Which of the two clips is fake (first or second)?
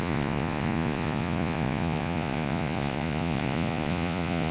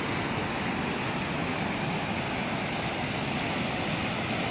first